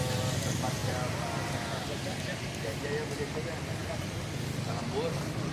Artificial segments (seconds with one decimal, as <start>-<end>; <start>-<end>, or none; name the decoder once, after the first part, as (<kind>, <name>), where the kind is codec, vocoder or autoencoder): 3.8-4.5 (vocoder, BigVGAN v2)